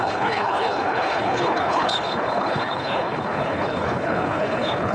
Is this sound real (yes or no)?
no